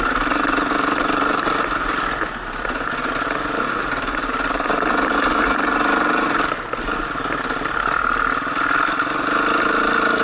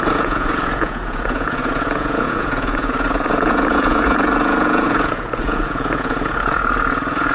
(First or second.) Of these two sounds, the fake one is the second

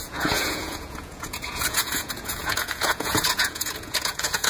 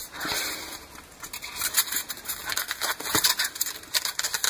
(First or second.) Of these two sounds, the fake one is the first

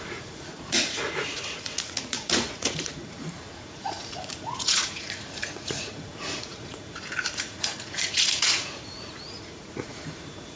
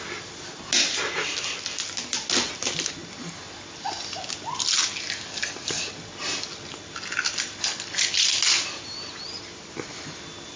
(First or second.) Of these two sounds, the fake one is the first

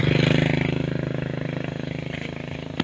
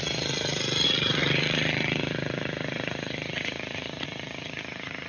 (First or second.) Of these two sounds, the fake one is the second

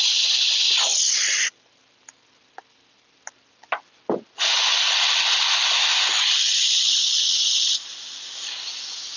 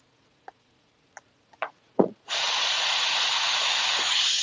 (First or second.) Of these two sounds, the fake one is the second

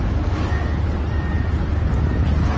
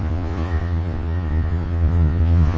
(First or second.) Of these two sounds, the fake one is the second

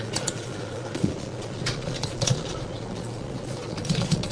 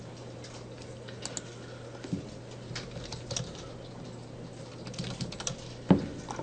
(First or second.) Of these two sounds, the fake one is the first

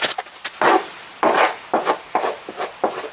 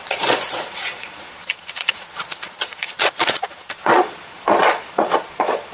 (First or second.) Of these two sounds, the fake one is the second